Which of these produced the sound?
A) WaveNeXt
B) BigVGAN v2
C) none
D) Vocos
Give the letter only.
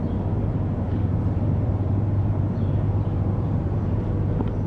B